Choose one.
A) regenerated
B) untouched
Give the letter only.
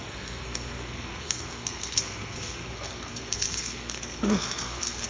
A